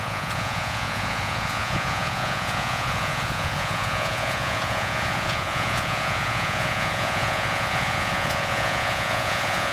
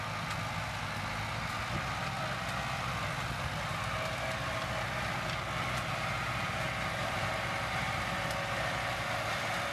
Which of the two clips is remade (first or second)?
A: first